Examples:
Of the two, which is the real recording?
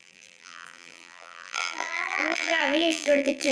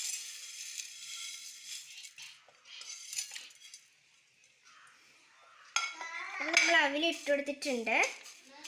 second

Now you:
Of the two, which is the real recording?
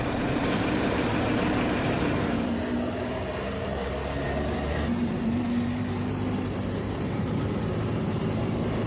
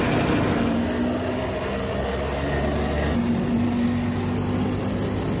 second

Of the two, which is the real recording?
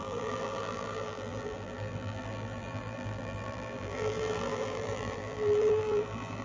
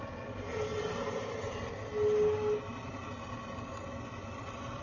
second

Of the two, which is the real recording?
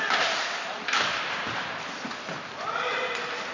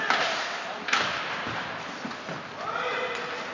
second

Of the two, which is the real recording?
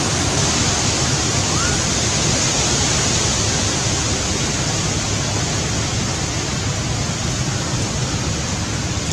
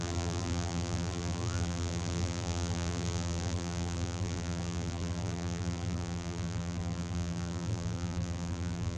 first